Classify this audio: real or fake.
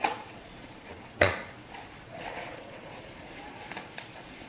fake